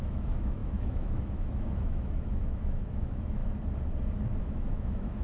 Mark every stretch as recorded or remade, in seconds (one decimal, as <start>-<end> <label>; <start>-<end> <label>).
0.0-3.4 remade; 3.4-4.4 recorded; 4.4-5.2 remade